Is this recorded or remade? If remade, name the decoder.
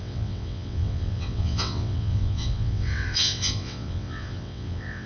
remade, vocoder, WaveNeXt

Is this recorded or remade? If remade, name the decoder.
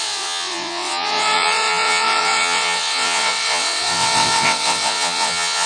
remade, vocoder, WaveNeXt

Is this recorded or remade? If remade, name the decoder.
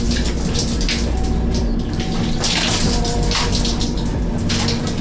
recorded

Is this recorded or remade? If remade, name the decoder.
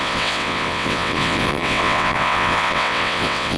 remade, vocoder, WaveNeXt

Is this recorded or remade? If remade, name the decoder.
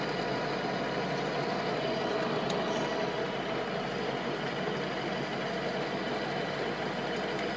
recorded